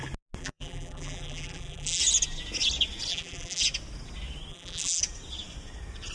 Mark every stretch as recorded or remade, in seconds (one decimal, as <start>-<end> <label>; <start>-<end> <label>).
0.0-0.4 recorded; 0.4-2.0 remade; 2.0-3.1 recorded; 3.1-3.6 remade; 3.6-4.5 recorded; 4.5-5.0 remade; 5.0-6.1 recorded